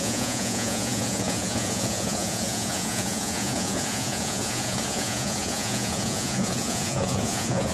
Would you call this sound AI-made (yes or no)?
yes